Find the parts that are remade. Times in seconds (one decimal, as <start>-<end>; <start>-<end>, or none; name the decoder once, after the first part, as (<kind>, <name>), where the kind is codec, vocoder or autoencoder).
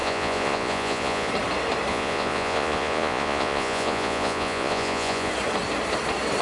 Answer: 0.0-1.3 (vocoder, Vocos); 1.9-5.3